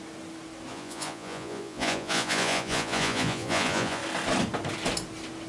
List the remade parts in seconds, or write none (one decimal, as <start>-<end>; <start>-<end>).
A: 0.7-4.0